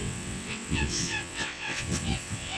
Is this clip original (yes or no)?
no